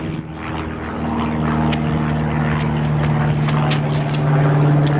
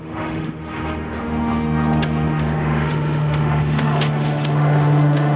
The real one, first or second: first